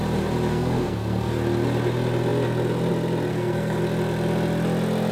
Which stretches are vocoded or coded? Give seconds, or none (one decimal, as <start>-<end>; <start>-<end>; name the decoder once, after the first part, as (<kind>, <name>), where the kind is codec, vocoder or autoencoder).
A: 0.5-1.3 (codec, SNAC); 3.3-3.8

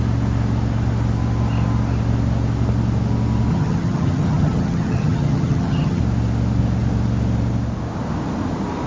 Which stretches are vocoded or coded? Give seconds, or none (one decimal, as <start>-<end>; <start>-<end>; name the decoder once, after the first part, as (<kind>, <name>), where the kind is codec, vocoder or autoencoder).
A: 3.5-6.0 (vocoder, HiFi-GAN)

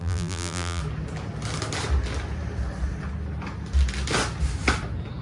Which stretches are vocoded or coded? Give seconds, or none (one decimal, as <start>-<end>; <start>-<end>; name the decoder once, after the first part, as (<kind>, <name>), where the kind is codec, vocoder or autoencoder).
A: 0.0-0.8 (vocoder, BigVGAN v2)